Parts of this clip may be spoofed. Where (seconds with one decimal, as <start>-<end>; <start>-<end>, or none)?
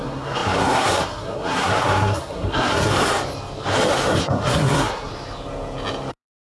0.0-2.9; 4.2-5.1; 6.1-6.5